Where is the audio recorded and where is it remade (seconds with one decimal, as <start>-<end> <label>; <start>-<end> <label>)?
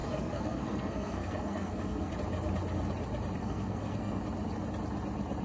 0.0-2.1 remade; 2.1-3.4 recorded; 3.4-4.2 remade; 4.2-5.4 recorded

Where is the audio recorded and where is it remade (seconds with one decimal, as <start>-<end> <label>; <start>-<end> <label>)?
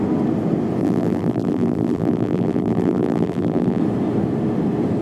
0.0-0.8 recorded; 0.8-3.8 remade; 3.8-5.0 recorded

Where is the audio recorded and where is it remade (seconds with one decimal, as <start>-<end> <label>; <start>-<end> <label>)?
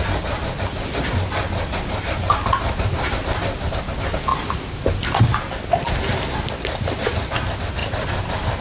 0.0-8.6 recorded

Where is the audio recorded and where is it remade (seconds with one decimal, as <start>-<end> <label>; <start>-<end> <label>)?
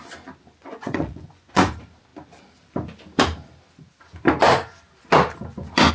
0.0-0.6 recorded; 0.6-1.7 remade; 1.7-5.9 recorded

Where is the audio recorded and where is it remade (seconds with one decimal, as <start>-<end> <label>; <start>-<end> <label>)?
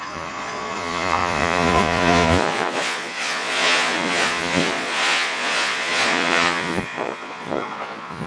0.0-8.3 remade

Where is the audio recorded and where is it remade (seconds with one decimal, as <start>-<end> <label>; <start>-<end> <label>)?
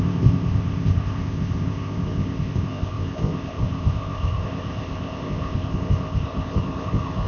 0.0-7.3 remade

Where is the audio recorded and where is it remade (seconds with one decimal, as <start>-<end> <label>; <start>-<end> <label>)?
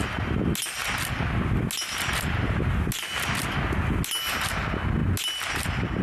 0.0-6.0 recorded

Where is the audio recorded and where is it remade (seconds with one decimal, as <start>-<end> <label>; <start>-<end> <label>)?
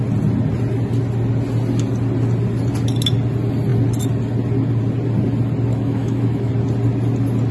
0.0-5.7 recorded; 5.7-6.5 remade; 6.5-7.5 recorded